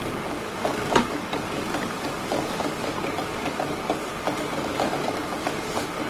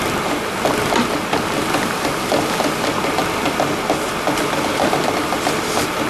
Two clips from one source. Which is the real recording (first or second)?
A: second